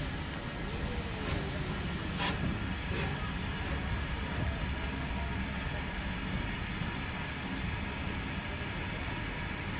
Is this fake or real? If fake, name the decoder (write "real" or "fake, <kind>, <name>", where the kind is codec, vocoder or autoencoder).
real